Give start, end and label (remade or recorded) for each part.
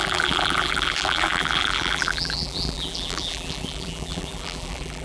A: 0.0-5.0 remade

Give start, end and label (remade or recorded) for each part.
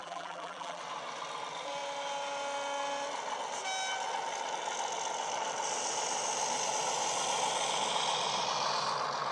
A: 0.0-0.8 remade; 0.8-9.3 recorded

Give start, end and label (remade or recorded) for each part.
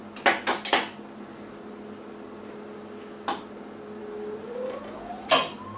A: 0.0-5.8 recorded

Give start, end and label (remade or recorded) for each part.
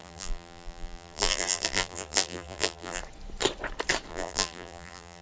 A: 0.0-3.0 remade; 3.0-4.1 recorded; 4.1-5.2 remade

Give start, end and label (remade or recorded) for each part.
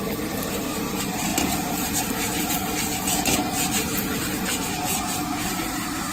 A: 0.0-1.3 remade; 1.3-2.5 recorded; 2.5-6.1 remade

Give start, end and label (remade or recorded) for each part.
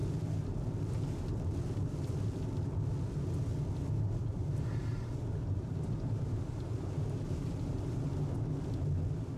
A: 0.0-4.3 recorded; 4.3-8.0 remade; 8.0-9.4 recorded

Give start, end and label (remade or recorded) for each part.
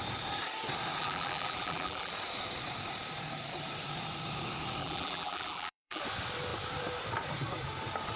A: 0.0-1.0 recorded; 1.0-2.1 remade; 2.1-4.8 recorded; 4.8-6.0 remade; 6.0-8.2 recorded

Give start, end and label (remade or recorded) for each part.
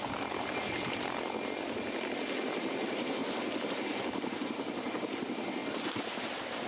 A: 0.0-5.6 recorded; 5.6-6.7 remade